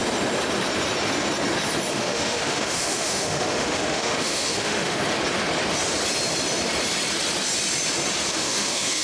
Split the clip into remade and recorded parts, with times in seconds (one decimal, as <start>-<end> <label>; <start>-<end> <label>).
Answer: 0.0-1.9 recorded; 1.9-5.0 remade; 5.0-8.3 recorded; 8.3-9.0 remade